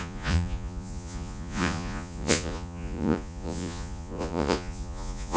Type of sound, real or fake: fake